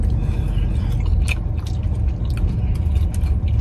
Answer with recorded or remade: recorded